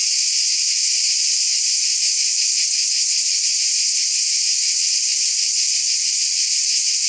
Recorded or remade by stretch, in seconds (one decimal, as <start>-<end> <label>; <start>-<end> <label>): 0.0-2.8 remade; 2.8-4.2 recorded; 4.2-7.1 remade